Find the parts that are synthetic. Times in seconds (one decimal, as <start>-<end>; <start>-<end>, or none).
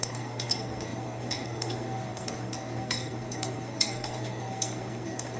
0.0-5.4